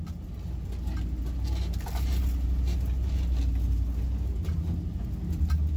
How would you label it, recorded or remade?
recorded